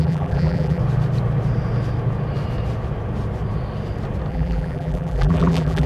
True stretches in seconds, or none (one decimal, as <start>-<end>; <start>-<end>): 0.8-4.3